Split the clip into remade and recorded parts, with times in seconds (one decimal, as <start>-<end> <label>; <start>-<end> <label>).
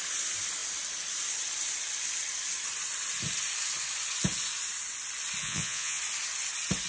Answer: 0.0-5.4 recorded; 5.4-6.0 remade; 6.0-6.9 recorded